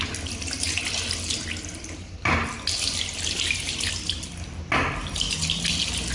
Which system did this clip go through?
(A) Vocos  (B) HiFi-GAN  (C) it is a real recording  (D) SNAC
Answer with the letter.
C